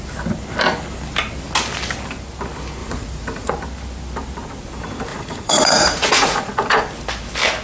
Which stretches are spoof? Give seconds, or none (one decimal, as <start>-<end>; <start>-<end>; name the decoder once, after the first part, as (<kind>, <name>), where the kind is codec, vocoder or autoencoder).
2.8-3.5 (vocoder, Vocos); 5.1-6.8